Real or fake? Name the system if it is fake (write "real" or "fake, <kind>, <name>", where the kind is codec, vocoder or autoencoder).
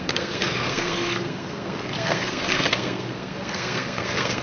fake, codec, SNAC